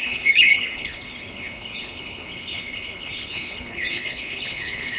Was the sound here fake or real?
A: fake